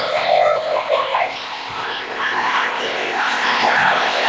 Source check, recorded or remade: remade